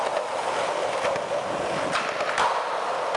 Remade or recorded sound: recorded